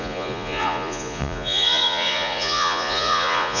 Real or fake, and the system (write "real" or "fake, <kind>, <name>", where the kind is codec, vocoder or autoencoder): fake, vocoder, Vocos